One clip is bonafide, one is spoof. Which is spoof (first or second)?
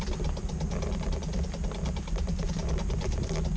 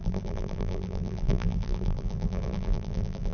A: second